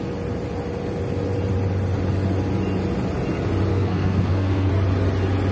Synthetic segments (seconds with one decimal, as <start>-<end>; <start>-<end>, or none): 3.7-4.7